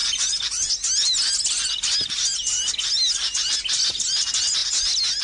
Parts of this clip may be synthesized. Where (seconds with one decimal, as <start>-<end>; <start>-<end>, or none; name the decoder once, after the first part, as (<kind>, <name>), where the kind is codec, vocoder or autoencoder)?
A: none